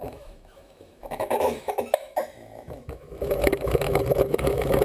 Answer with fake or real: fake